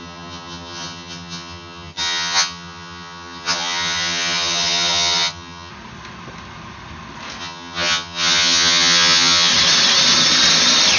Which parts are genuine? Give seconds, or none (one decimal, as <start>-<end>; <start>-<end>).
5.7-7.4; 9.5-11.0